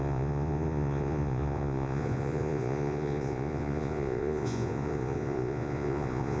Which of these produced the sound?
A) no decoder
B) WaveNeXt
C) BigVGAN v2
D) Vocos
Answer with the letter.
D